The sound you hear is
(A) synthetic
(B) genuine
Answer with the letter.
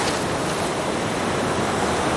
B